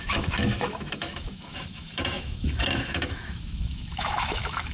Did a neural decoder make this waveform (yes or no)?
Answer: yes